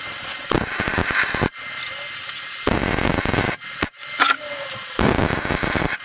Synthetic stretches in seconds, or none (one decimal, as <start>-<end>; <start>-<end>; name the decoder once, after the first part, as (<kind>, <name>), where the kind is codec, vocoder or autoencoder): none

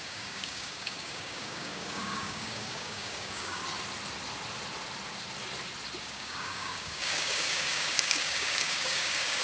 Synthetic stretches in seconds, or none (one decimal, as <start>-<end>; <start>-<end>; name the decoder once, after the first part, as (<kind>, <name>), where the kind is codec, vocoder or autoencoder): 0.0-3.6 (codec, DAC); 6.0-9.4

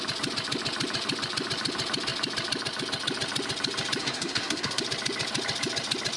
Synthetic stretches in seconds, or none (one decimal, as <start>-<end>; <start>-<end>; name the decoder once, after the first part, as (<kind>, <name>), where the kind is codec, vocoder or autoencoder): 4.0-4.8 (codec, SNAC)

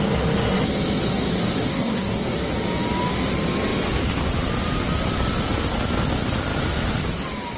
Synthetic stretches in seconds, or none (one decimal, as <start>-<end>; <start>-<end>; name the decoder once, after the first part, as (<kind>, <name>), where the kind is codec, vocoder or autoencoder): 1.7-2.2 (codec, SNAC)

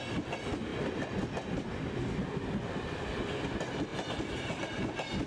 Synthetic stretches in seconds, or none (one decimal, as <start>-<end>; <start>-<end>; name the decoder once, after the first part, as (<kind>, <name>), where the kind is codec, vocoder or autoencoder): none

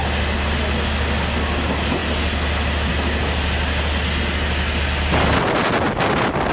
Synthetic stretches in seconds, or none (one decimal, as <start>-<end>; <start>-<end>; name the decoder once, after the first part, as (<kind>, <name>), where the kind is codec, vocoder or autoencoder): none